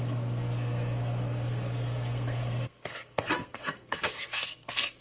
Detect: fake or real fake